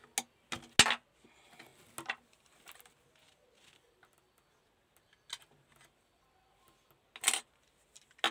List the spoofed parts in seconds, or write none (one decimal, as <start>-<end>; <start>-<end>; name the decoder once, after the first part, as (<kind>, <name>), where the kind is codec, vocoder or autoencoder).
none

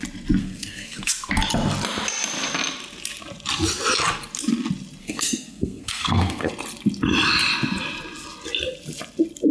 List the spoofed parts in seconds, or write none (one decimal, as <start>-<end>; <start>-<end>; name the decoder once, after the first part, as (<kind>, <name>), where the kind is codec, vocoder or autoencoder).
0.4-1.1 (codec, SNAC); 5.0-6.5